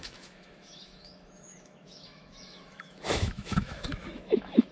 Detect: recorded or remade remade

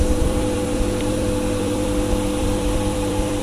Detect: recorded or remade remade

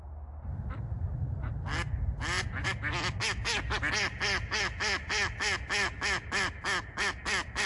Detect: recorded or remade recorded